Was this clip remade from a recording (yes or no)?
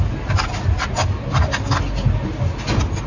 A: no